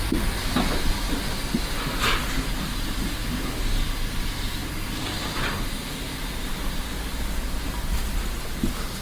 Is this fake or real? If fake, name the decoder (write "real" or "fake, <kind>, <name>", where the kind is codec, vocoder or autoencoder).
real